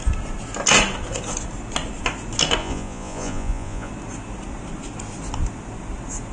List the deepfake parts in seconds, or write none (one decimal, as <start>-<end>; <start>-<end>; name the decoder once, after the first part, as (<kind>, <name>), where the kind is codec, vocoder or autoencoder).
2.6-3.9 (vocoder, Vocos)